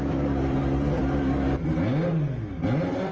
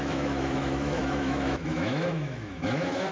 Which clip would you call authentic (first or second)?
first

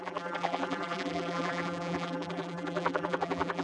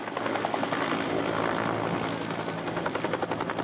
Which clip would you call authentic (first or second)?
second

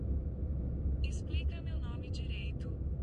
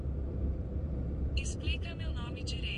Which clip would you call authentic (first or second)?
first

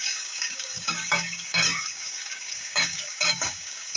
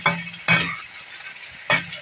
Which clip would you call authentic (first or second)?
second